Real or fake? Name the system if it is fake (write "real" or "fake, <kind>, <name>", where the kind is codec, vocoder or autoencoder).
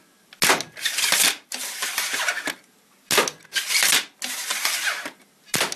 real